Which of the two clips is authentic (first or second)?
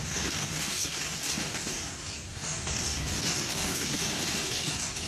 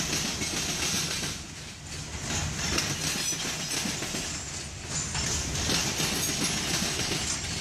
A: second